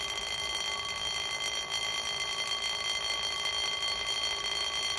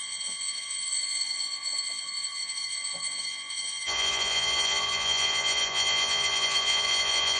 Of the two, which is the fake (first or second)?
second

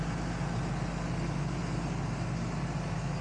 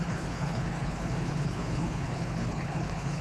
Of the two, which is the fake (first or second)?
second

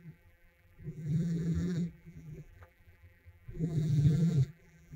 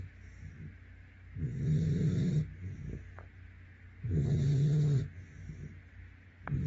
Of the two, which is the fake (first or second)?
first